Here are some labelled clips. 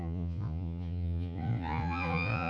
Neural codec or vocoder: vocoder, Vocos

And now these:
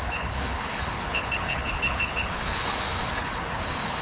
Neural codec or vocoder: codec, HILCodec